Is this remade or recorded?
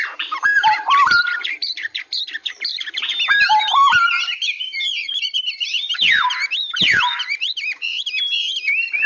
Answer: remade